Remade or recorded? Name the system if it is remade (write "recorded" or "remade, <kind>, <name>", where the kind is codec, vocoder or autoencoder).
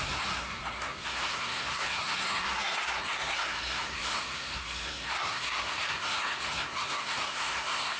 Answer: remade, codec, SNAC